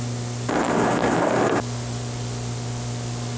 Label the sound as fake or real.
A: real